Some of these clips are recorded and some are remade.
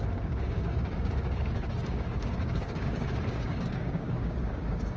remade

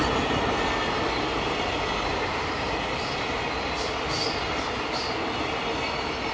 recorded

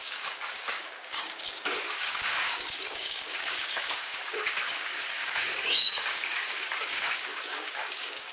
remade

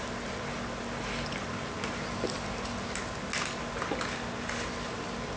recorded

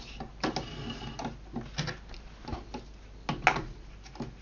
recorded